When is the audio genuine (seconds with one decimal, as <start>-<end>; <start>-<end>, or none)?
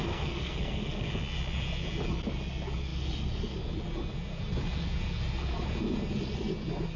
1.1-7.0